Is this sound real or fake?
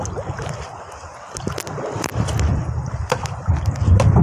real